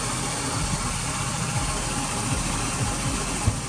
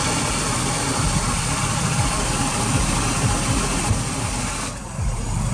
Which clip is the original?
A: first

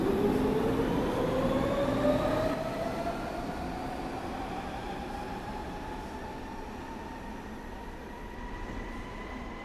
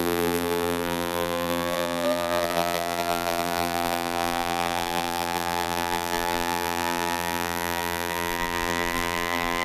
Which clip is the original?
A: first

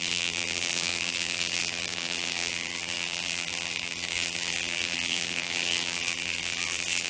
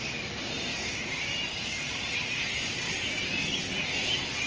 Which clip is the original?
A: second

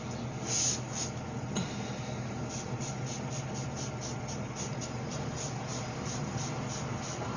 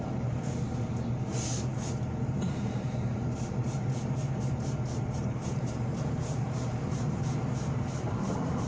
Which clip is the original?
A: first